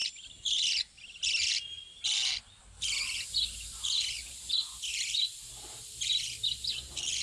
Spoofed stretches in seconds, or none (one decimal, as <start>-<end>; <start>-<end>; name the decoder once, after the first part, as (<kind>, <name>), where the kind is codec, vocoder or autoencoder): none